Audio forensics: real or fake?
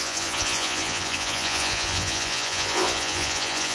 fake